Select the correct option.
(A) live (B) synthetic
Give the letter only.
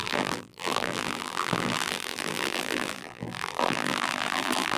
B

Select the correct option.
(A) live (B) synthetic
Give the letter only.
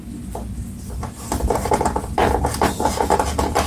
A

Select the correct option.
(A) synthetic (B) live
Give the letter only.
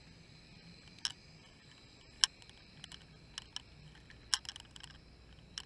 B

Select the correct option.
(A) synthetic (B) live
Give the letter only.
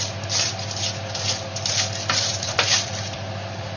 A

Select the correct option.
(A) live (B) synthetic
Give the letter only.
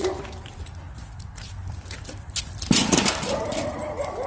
B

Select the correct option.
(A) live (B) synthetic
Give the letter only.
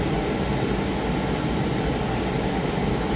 B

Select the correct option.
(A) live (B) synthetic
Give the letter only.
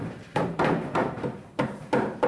B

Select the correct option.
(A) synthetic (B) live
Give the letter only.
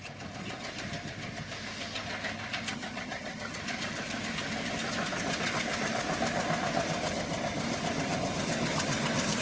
B